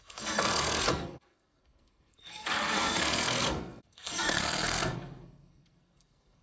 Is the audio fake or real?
fake